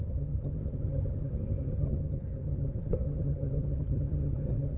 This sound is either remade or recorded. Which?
remade